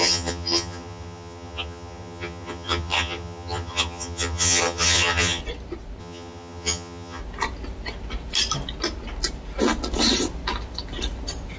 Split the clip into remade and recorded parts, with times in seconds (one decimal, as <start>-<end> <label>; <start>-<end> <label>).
0.0-5.4 remade; 5.4-6.0 recorded; 6.0-7.2 remade; 7.2-11.6 recorded